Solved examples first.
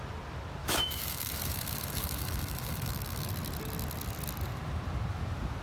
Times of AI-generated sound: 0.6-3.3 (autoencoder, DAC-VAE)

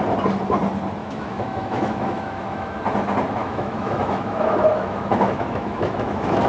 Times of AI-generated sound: 1.0-2.8 (autoencoder, DAC-VAE); 3.4-6.5

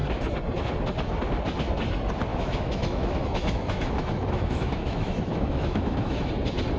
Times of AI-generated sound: 2.3-6.3 (autoencoder, DAC-VAE)